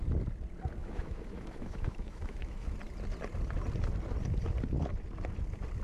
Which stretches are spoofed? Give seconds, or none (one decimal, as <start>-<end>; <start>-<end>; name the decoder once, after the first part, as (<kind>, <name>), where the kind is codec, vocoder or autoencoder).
0.8-2.7 (autoencoder, DAC-VAE)